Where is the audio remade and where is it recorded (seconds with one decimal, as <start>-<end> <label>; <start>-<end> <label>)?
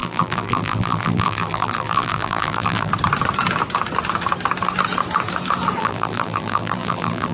0.0-2.9 remade; 2.9-5.8 recorded; 5.8-7.3 remade